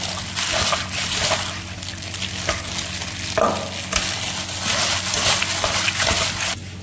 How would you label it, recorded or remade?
recorded